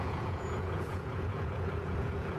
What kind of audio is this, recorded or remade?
remade